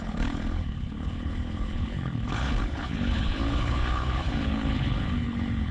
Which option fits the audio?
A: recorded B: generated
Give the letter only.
B